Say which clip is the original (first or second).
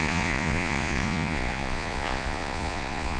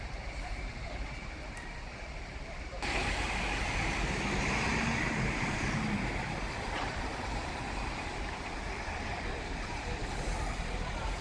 second